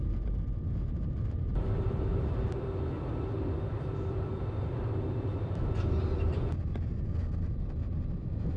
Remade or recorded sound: remade